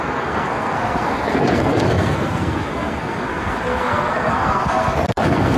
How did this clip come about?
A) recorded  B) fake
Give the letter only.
B